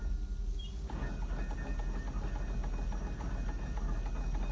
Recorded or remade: recorded